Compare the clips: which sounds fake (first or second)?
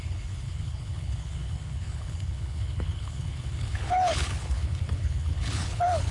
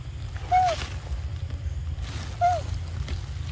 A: first